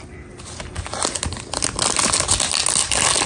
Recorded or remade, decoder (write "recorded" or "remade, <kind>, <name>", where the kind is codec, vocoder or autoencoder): recorded